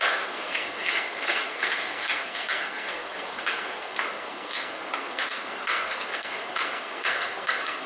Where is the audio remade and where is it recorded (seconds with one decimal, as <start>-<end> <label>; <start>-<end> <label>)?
0.0-7.9 remade